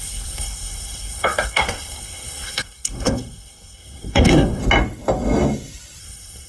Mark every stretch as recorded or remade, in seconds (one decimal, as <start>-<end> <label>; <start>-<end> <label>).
0.0-4.6 remade; 4.6-6.0 recorded; 6.0-6.5 remade